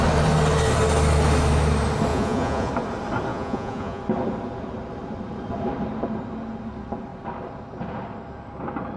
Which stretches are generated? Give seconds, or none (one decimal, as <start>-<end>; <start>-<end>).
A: 2.1-2.7; 3.3-4.0